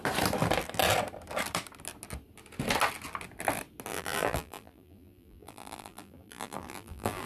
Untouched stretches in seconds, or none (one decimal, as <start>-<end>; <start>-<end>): 0.0-3.9